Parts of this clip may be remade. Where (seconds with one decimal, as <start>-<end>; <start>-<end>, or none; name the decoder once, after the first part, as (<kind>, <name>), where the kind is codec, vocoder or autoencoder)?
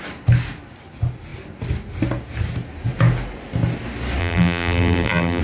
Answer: 4.2-5.4 (vocoder, BigVGAN v2)